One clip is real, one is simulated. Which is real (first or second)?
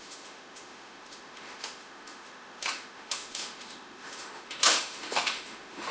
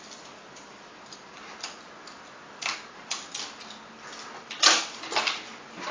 second